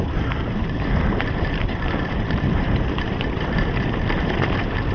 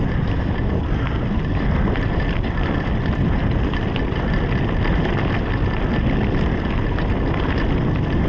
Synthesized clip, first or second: first